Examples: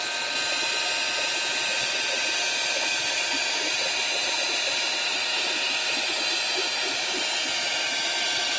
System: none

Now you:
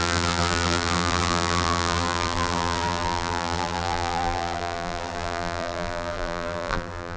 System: vocoder, BigVGAN v2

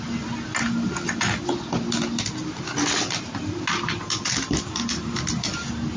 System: none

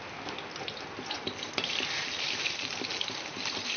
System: none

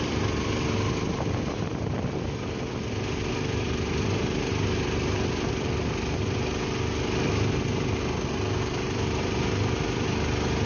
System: vocoder, BigVGAN v2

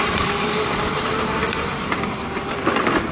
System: vocoder, BigVGAN v2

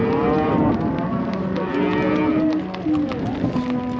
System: none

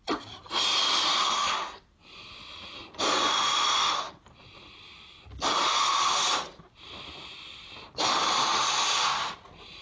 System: vocoder, BigVGAN v2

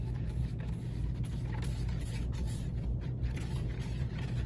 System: vocoder, BigVGAN v2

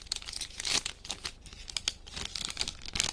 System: none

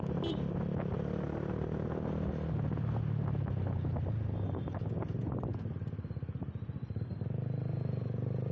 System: none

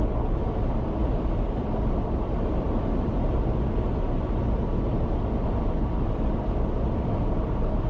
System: none